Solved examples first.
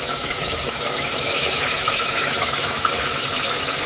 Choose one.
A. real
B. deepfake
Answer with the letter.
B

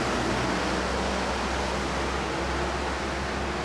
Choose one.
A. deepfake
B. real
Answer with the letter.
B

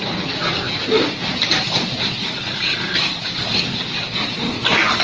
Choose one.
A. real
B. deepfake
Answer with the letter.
A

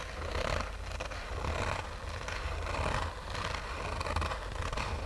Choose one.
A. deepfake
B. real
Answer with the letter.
B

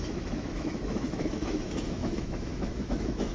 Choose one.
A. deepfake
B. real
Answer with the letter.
A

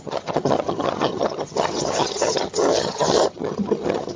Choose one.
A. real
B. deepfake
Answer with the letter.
B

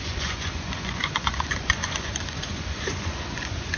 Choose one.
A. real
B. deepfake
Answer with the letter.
B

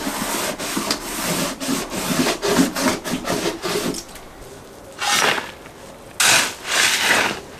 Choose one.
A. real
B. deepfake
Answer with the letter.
A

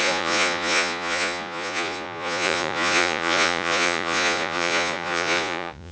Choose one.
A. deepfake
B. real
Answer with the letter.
A